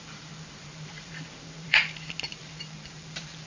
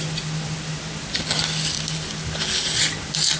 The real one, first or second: second